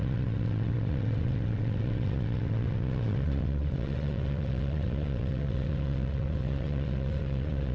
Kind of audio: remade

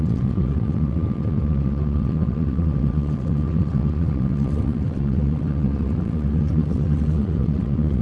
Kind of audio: remade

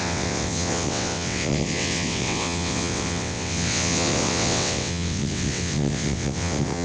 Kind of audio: remade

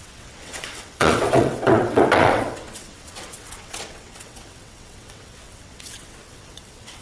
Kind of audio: remade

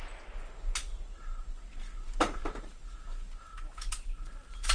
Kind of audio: recorded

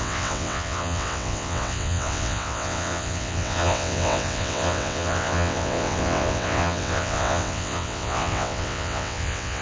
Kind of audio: remade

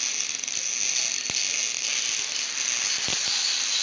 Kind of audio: recorded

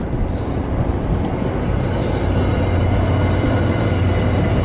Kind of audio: recorded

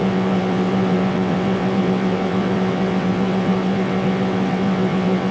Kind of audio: remade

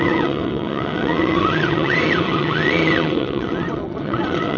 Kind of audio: remade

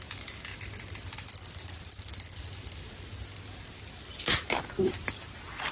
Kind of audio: recorded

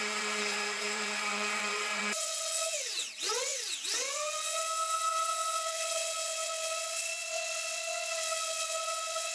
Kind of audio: remade